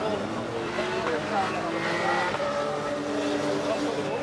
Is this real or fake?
real